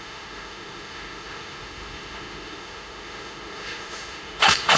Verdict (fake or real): fake